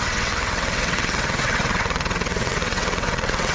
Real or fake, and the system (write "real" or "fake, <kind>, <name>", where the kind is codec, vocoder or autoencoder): fake, vocoder, WaveNeXt